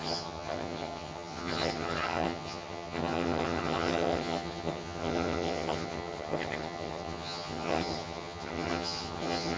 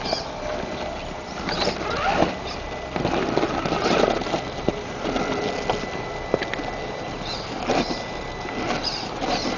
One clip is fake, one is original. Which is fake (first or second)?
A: first